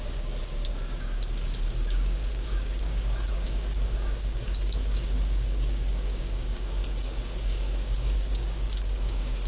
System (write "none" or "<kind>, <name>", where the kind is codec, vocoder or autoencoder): codec, DAC